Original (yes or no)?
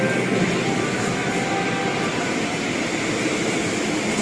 yes